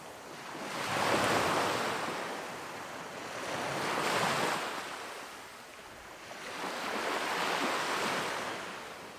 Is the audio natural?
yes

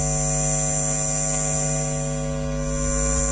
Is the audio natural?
yes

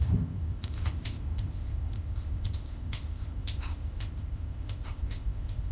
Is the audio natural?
no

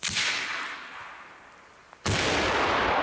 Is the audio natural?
yes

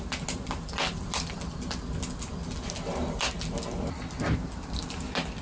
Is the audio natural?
yes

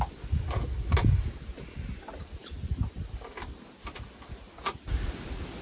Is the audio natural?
yes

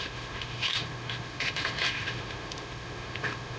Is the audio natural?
no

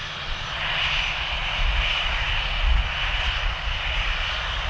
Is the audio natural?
yes